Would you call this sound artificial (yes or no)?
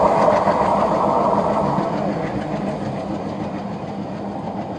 no